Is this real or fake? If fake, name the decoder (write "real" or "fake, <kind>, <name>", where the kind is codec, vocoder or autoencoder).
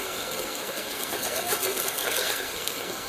fake, codec, SNAC